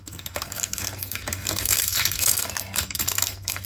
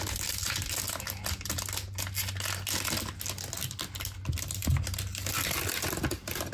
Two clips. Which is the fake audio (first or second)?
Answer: first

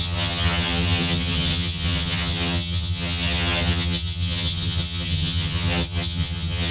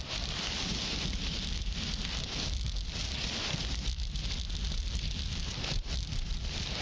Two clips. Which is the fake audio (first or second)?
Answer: first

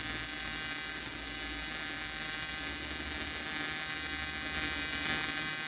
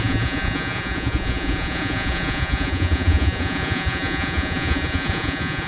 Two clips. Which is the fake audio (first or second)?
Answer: second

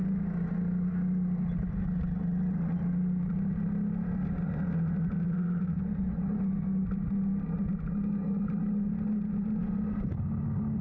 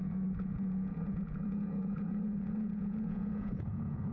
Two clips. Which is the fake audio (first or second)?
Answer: second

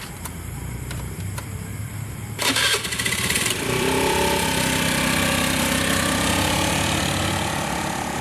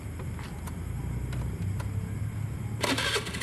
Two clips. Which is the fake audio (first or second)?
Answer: first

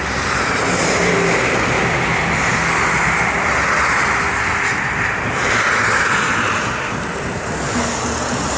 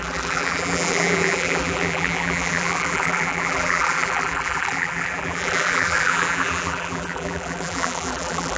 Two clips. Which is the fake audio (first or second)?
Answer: second